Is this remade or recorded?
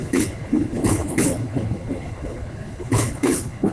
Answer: remade